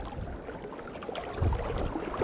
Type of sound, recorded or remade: recorded